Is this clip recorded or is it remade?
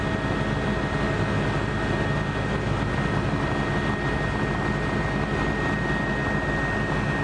recorded